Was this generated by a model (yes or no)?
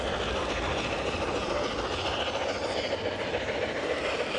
yes